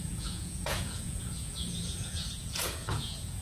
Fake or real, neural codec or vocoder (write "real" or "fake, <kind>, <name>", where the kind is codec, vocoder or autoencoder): fake, vocoder, Vocos